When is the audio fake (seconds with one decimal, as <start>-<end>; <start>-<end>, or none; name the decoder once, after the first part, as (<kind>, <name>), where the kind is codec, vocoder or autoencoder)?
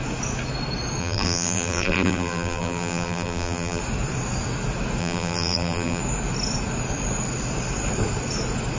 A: 1.0-3.8 (vocoder, BigVGAN v2); 5.0-6.0